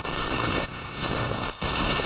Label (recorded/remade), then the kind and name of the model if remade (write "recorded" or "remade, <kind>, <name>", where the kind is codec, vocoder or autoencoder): remade, codec, SNAC